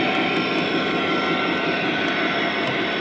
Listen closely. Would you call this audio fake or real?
real